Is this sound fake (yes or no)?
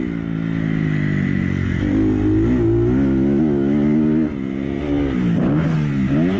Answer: no